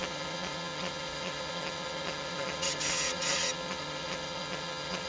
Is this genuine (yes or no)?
no